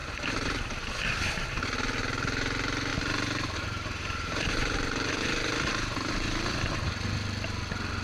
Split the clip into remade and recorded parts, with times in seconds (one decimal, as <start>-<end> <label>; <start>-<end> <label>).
0.0-0.9 remade; 0.9-2.9 recorded; 2.9-6.6 remade; 6.6-8.0 recorded